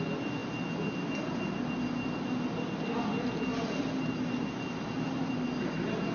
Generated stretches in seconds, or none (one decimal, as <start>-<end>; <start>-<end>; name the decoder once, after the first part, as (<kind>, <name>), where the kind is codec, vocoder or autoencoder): none